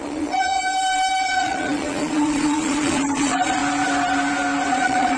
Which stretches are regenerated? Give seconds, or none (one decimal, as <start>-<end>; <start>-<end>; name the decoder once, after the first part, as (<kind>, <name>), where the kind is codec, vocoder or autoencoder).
0.0-0.6 (vocoder, Vocos); 1.2-3.6; 4.7-5.2